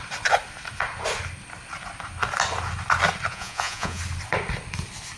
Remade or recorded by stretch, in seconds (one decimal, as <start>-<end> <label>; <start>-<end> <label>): 0.0-3.3 recorded; 3.3-4.0 remade; 4.0-5.2 recorded